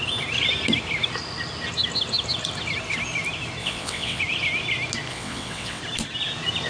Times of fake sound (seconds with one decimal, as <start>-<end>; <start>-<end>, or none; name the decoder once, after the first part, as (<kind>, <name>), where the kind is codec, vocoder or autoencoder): 3.6-4.2 (vocoder, WaveNeXt); 5.1-5.8